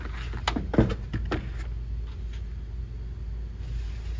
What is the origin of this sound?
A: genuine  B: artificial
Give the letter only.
A